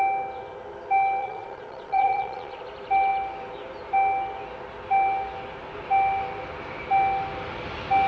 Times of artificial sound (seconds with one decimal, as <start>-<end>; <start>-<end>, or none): 1.2-2.6